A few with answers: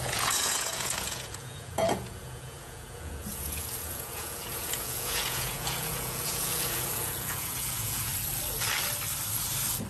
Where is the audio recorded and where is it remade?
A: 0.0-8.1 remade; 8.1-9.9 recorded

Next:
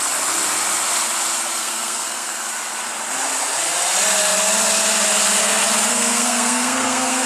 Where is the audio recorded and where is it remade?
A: 0.0-1.6 recorded; 1.6-2.5 remade; 2.5-5.9 recorded; 5.9-7.3 remade

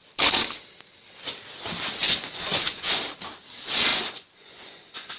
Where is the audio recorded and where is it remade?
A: 0.0-2.0 recorded; 2.0-3.0 remade; 3.0-3.9 recorded; 3.9-5.2 remade